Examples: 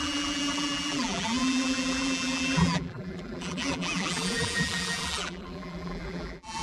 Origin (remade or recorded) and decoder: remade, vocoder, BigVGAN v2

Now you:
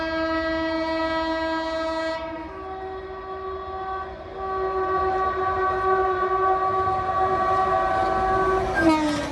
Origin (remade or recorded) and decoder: recorded